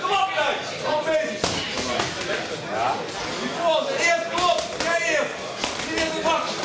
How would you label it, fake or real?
real